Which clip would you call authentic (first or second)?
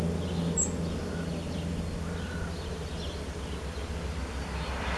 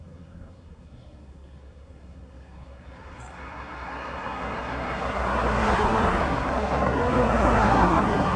first